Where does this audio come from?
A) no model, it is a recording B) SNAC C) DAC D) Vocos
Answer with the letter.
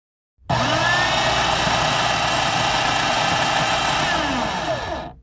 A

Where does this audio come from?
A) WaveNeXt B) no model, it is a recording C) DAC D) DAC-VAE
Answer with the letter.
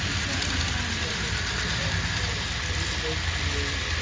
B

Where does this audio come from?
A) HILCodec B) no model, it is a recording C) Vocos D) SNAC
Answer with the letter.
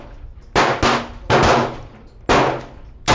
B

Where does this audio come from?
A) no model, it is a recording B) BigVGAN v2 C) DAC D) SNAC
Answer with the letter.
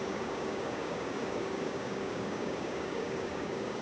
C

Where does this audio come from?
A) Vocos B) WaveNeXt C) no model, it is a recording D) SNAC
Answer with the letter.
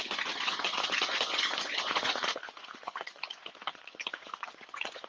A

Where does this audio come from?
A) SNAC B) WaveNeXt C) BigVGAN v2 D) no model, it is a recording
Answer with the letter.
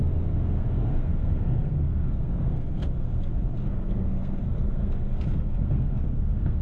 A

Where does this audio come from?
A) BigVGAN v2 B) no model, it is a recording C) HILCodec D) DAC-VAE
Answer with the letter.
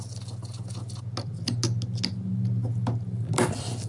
B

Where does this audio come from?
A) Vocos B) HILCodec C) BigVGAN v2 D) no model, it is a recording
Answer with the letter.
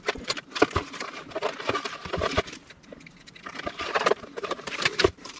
C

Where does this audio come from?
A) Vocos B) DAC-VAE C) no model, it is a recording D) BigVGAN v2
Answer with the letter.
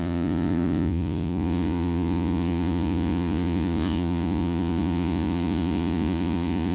A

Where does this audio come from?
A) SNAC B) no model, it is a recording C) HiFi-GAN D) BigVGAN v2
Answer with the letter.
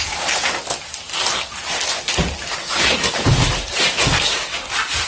B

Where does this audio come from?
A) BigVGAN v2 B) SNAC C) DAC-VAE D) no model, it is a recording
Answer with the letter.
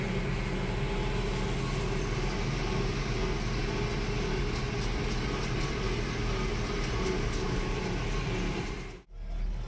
D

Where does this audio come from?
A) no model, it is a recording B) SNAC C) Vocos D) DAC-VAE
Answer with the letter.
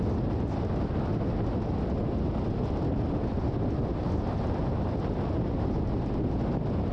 A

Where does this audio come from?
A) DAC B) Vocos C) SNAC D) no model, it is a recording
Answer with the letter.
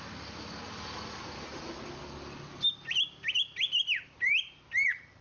D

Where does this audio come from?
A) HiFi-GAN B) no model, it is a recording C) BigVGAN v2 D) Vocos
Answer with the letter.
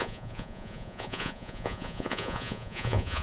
D